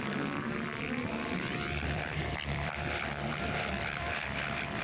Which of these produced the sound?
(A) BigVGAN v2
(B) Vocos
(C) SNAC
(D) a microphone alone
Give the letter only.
A